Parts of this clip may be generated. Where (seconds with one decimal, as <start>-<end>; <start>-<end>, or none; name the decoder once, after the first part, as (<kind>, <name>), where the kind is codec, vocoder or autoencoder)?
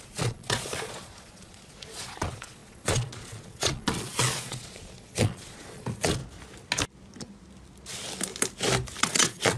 0.0-6.2 (vocoder, Vocos); 9.0-9.6